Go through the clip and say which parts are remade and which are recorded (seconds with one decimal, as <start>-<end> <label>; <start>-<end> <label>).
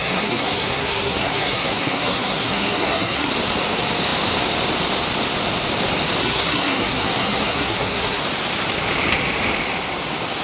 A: 0.0-3.3 remade; 3.3-6.2 recorded; 6.2-8.2 remade; 8.2-10.4 recorded